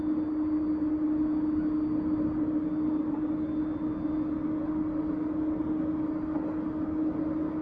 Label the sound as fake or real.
real